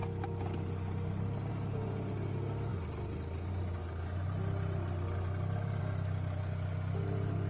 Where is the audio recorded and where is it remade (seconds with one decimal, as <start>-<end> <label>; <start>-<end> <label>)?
0.0-7.5 recorded